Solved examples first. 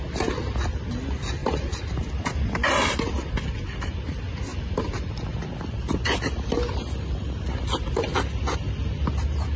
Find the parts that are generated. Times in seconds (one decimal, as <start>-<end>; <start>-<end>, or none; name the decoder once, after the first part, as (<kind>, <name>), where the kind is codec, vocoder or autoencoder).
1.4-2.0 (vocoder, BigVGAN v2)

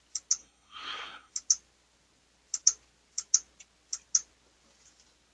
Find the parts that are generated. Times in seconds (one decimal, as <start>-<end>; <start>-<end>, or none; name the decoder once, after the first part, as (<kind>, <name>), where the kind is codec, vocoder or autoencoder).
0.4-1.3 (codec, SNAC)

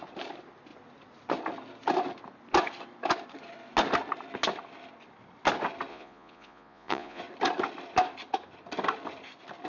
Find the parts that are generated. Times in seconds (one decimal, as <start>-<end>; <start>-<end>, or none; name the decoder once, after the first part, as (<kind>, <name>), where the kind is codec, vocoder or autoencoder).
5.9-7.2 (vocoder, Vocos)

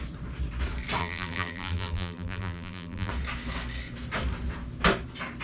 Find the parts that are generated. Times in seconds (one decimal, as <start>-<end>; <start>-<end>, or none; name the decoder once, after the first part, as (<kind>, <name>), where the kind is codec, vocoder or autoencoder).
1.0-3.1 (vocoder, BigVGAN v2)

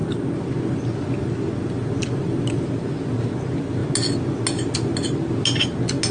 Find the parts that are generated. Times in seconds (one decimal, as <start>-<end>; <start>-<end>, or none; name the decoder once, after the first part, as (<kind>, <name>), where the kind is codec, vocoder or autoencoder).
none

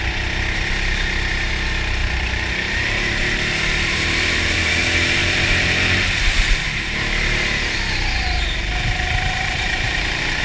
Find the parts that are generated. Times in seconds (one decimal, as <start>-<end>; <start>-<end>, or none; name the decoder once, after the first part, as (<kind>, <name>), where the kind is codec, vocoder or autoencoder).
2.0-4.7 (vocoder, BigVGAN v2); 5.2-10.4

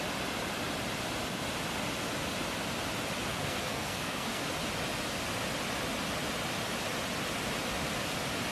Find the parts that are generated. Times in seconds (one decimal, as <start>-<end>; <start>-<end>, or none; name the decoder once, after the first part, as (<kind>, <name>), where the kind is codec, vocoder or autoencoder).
3.3-4.4 (codec, SNAC)